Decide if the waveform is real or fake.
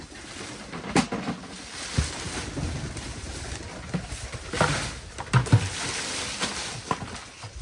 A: real